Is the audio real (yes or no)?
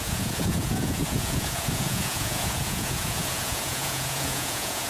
no